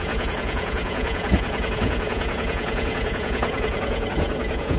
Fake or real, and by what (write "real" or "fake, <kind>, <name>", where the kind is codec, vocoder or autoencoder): fake, vocoder, Vocos